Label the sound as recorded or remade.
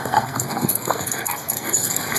remade